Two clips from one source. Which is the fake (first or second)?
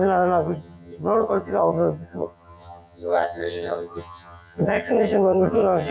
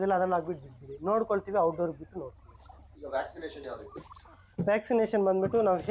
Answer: first